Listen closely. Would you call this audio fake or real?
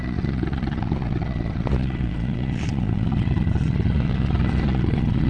fake